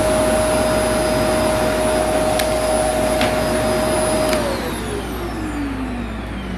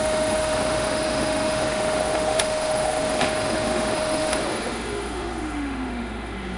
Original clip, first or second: first